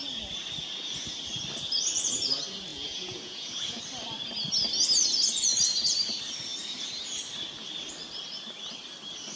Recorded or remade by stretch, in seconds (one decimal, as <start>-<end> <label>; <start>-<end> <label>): 0.0-2.7 recorded; 2.7-3.8 remade; 3.8-9.4 recorded